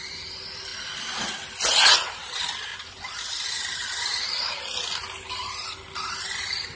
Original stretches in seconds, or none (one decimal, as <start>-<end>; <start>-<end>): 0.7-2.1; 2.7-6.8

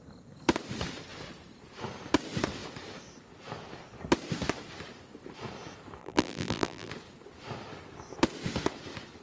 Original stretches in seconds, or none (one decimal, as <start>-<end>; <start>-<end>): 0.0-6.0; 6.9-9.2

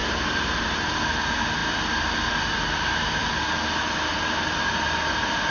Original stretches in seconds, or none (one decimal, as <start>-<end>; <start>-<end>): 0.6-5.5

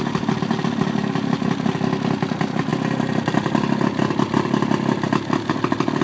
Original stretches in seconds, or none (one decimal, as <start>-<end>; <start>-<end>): 0.0-6.0

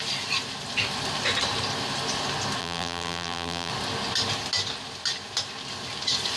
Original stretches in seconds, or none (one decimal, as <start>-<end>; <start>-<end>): 0.0-2.6; 3.7-6.4